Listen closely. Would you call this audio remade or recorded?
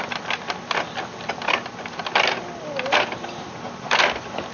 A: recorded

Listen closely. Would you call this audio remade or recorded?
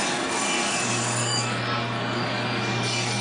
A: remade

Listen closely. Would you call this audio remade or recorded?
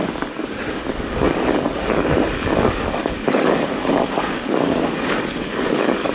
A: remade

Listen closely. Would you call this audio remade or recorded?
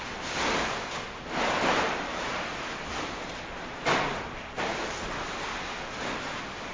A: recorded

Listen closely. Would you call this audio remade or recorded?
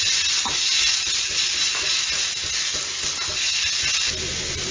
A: recorded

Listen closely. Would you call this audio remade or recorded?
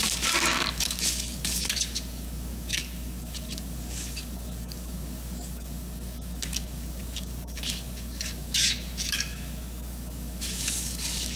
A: remade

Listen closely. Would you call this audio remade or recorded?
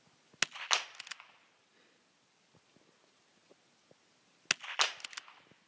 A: recorded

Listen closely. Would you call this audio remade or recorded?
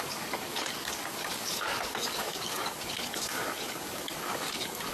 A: remade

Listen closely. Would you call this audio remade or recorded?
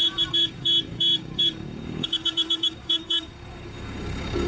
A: remade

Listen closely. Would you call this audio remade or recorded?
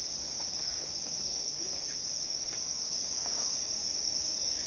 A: remade